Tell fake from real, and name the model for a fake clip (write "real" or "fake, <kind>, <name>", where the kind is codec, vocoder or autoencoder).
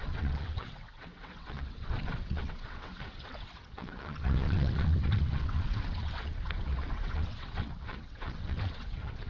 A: fake, vocoder, WaveNeXt